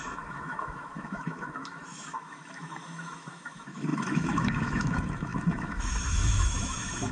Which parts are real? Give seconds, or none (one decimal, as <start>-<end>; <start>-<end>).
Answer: none